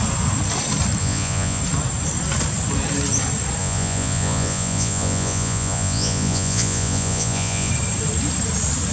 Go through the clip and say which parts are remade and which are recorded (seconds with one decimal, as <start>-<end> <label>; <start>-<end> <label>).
0.0-1.0 recorded; 1.0-1.6 remade; 1.6-3.6 recorded; 3.6-7.7 remade; 7.7-8.9 recorded